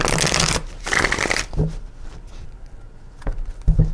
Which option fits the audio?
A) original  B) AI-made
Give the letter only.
A